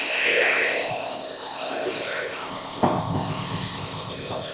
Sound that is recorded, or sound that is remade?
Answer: remade